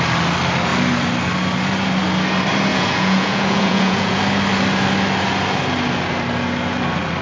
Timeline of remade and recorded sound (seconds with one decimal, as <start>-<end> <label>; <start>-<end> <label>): 0.0-2.7 recorded; 2.7-4.2 remade; 4.2-7.2 recorded